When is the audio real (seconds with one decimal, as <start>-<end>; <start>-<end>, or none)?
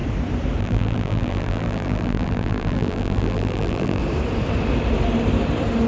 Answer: 0.0-0.6; 4.0-5.9